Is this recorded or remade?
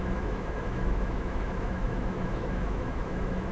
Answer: remade